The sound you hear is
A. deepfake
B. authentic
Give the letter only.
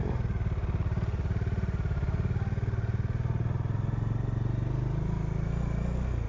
B